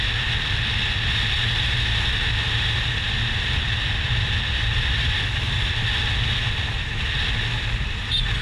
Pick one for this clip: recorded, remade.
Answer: recorded